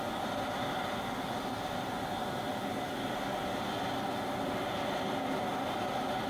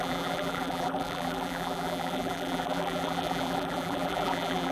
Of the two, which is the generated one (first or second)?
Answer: second